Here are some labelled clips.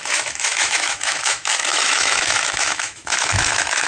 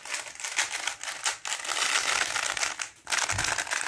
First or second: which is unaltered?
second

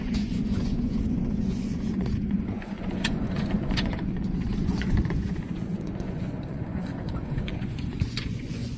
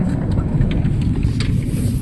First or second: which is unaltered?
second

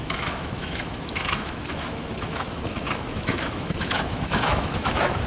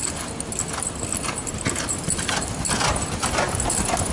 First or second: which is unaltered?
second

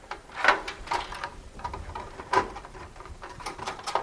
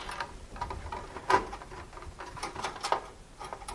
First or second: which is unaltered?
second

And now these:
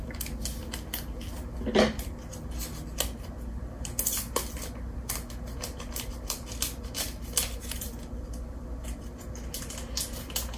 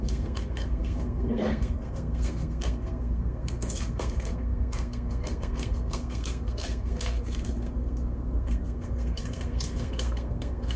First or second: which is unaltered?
first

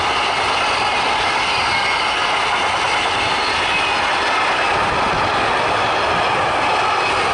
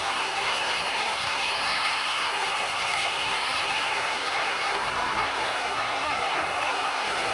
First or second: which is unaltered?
first